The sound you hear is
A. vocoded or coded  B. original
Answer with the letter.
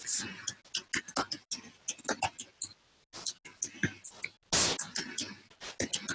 B